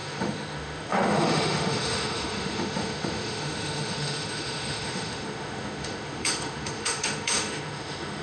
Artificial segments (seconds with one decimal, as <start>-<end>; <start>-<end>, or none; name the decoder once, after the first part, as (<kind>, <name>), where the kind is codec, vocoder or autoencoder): 0.0-8.2 (autoencoder, DAC-VAE)